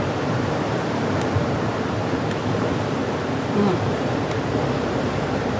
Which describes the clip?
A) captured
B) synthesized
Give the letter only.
B